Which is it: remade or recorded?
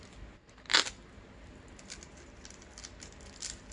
recorded